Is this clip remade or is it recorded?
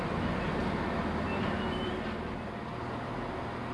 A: recorded